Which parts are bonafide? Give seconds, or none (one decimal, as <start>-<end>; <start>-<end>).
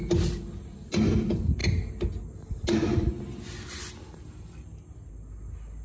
0.0-5.8